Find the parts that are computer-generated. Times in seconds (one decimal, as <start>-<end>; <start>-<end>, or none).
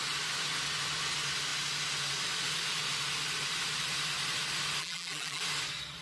4.8-5.4